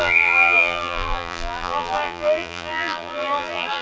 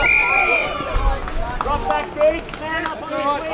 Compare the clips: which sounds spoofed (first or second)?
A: first